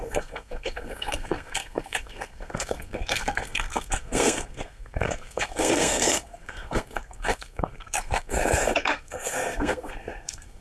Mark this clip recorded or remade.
remade